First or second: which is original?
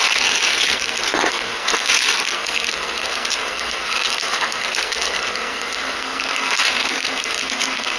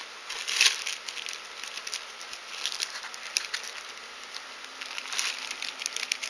second